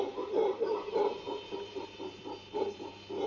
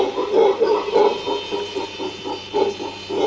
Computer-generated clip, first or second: first